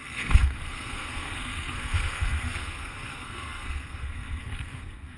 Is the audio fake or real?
fake